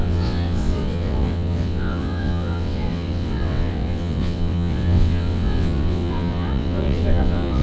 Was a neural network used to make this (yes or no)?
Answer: yes